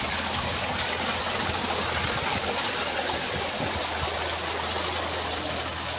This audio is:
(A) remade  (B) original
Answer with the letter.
B